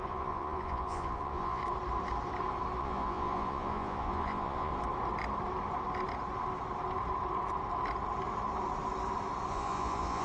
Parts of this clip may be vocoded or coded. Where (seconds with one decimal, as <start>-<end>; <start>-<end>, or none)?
0.0-1.6; 2.8-4.7; 9.5-10.2